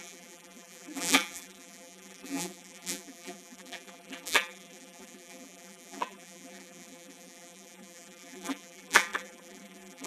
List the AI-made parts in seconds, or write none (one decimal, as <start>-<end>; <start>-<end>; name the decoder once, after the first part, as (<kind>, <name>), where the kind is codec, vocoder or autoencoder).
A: 0.0-10.1 (vocoder, BigVGAN v2)

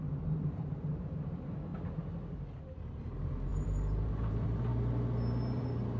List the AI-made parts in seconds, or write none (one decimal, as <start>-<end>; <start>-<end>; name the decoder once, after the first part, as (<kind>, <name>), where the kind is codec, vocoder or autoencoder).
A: 0.0-1.7 (vocoder, BigVGAN v2); 2.5-4.7

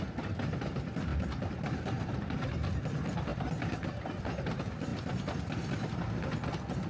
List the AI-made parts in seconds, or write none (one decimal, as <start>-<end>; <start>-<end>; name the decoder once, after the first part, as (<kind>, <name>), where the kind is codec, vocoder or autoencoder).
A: 1.1-2.8 (vocoder, BigVGAN v2)

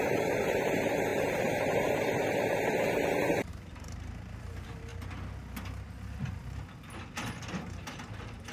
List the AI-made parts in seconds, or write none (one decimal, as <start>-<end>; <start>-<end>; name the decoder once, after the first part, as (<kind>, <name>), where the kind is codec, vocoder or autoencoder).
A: 0.0-4.9 (vocoder, BigVGAN v2); 7.5-8.5

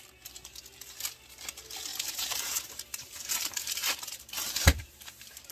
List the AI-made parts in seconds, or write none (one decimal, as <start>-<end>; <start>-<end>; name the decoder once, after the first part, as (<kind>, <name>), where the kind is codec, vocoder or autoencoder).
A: 1.9-5.5 (vocoder, BigVGAN v2)

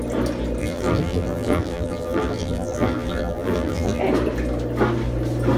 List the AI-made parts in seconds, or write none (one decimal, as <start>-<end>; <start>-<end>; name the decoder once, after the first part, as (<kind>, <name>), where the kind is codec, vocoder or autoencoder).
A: 0.6-4.0 (vocoder, BigVGAN v2)